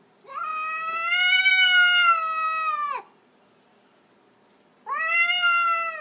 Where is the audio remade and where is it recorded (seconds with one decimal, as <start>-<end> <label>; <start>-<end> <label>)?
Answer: 0.0-6.0 recorded